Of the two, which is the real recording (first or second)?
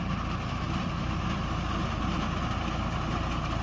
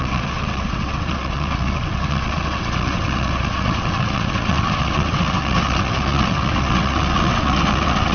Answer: first